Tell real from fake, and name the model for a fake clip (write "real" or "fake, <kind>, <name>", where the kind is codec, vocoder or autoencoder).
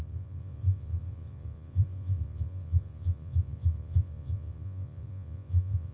fake, vocoder, Vocos